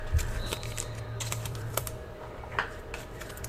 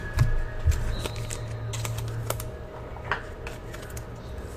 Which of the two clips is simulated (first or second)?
first